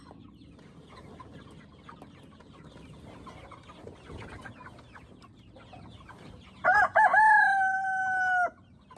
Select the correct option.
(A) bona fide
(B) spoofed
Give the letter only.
A